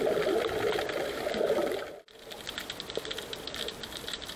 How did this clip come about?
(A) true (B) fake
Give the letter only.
A